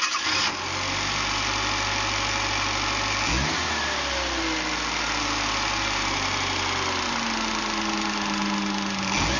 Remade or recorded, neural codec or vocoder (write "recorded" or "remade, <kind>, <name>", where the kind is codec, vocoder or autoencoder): recorded